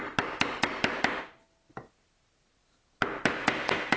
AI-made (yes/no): no